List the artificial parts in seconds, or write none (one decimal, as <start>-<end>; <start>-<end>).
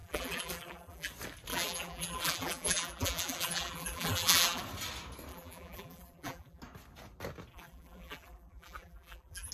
0.0-1.1; 1.5-4.6; 5.3-6.6; 7.5-9.5